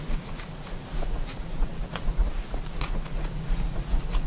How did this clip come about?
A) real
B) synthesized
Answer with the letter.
B